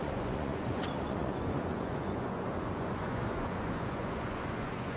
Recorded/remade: remade